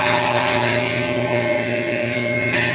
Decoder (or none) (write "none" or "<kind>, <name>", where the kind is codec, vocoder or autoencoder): vocoder, HiFi-GAN